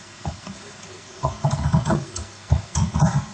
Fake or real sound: fake